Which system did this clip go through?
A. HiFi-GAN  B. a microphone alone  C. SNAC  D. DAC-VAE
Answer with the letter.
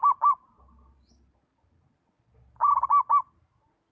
B